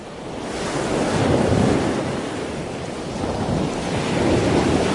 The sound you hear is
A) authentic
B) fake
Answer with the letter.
A